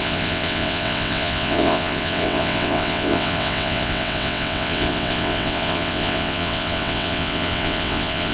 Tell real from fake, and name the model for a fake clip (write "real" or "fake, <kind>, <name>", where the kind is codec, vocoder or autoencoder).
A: fake, vocoder, WaveNeXt